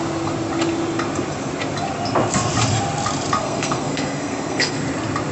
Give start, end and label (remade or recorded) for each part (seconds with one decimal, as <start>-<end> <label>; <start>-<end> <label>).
0.0-3.4 recorded; 3.4-4.8 remade; 4.8-5.3 recorded